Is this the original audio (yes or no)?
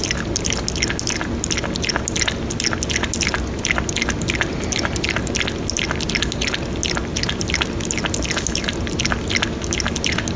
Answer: yes